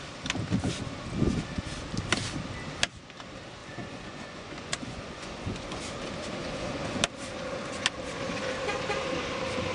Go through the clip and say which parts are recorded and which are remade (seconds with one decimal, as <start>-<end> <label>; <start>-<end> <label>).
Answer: 0.0-3.6 recorded; 3.6-5.8 remade; 5.8-6.4 recorded; 6.4-7.0 remade; 7.0-9.7 recorded